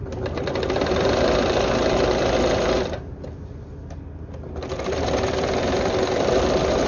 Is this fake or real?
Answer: real